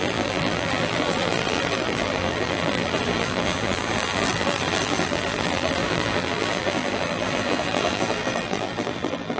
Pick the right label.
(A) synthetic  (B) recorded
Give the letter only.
A